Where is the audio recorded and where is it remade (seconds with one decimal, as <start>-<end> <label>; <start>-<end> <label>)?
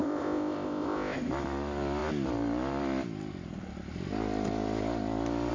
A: 0.0-1.3 remade; 1.3-5.5 recorded